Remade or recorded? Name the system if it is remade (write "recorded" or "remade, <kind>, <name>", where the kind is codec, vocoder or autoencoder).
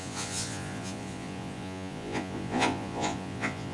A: remade, vocoder, Vocos